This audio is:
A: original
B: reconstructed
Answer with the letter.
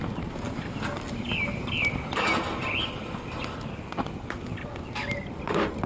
A